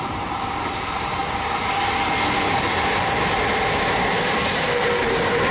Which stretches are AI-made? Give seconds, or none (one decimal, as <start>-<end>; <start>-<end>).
0.0-1.2; 4.5-5.5